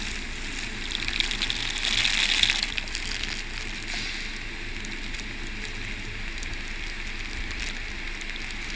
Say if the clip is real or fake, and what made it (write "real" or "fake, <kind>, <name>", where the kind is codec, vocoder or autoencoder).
real